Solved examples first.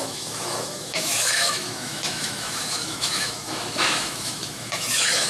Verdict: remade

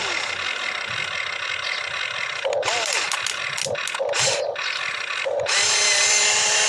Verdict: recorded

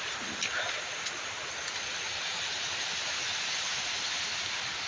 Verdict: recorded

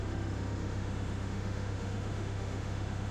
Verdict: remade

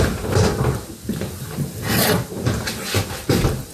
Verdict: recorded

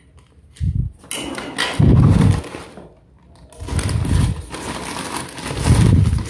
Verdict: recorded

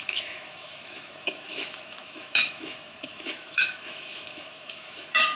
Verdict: remade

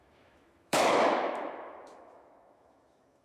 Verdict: remade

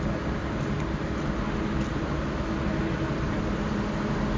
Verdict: recorded